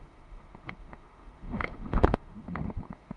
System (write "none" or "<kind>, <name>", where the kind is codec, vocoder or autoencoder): autoencoder, DAC-VAE